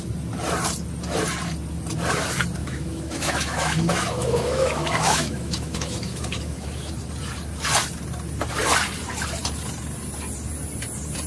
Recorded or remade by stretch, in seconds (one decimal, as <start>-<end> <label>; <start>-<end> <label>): 0.0-2.6 recorded; 2.6-6.9 remade; 6.9-11.3 recorded